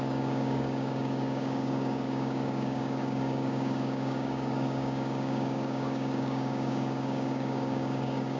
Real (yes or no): no